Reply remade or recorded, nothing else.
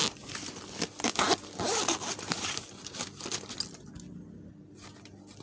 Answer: recorded